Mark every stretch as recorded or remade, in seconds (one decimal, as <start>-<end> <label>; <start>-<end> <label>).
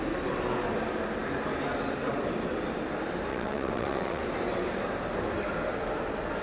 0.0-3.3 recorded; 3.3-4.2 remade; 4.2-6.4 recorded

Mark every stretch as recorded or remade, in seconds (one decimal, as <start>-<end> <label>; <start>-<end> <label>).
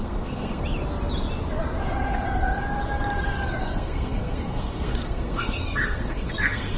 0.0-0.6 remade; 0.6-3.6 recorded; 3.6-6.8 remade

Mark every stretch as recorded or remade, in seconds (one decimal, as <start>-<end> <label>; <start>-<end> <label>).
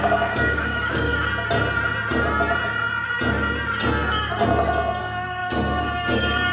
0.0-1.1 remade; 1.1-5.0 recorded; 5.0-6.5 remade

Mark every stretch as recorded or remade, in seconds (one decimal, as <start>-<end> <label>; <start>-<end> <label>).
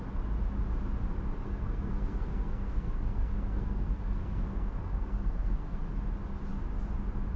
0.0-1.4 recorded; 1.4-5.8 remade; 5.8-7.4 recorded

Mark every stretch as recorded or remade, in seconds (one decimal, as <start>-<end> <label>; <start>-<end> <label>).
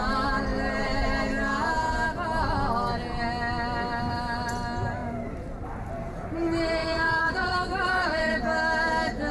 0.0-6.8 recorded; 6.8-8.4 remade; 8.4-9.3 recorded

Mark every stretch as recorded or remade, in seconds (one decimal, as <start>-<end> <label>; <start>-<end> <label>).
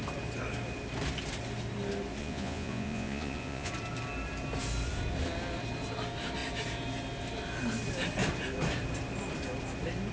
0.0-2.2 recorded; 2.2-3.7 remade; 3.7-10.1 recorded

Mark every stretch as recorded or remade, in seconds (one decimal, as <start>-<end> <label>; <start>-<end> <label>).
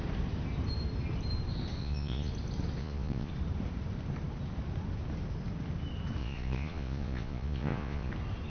0.0-1.8 recorded; 1.8-2.3 remade; 2.3-2.8 recorded; 2.8-3.3 remade; 3.3-6.2 recorded; 6.2-8.1 remade; 8.1-8.5 recorded